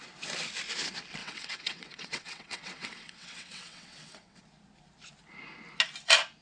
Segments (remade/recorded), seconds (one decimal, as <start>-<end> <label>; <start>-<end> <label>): 0.0-1.2 recorded; 1.2-4.4 remade; 4.4-6.4 recorded